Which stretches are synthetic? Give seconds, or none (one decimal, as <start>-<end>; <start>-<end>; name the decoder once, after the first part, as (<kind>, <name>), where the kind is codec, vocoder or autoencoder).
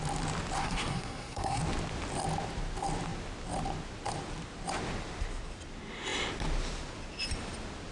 0.6-1.6 (codec, SNAC)